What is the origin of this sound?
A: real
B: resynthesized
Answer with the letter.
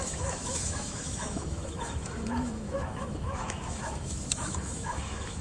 B